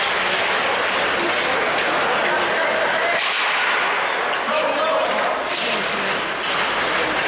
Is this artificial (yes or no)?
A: no